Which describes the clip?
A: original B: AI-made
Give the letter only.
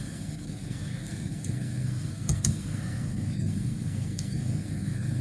B